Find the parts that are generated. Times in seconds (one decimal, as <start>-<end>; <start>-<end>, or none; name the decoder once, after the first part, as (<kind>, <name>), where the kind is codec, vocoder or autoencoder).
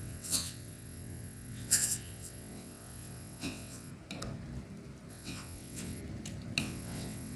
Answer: 0.0-3.9 (vocoder, WaveNeXt); 5.1-6.0; 6.6-7.4